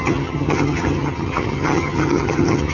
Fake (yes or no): yes